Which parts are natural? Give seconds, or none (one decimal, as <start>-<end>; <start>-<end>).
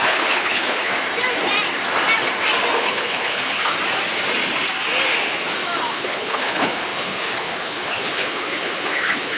0.9-2.8; 3.7-5.9